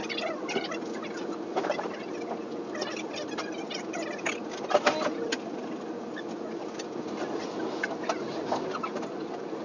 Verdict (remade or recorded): recorded